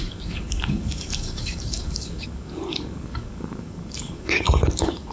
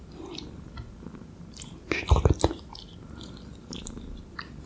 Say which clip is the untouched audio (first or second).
second